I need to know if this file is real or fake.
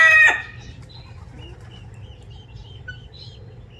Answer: real